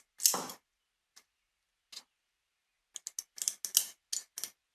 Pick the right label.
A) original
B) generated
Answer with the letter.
A